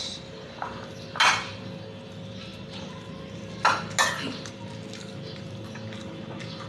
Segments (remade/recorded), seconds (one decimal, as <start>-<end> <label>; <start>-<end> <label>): 0.0-6.7 recorded